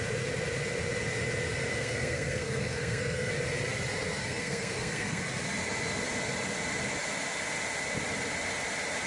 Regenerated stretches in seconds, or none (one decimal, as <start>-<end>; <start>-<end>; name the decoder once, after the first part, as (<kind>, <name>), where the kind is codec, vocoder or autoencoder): 1.7-3.3 (codec, SNAC); 4.2-5.2